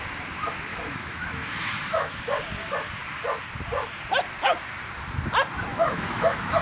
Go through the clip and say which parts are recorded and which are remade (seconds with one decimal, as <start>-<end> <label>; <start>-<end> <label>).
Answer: 0.0-0.7 recorded; 0.7-2.2 remade; 2.2-5.7 recorded; 5.7-6.6 remade